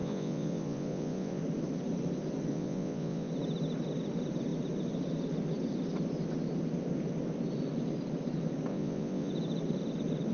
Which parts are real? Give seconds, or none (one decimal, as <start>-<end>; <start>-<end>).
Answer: 1.4-2.5; 3.3-8.7; 9.3-10.3